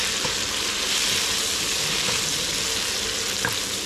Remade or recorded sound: recorded